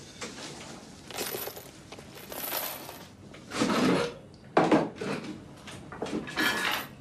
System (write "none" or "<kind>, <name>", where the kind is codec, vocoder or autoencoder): none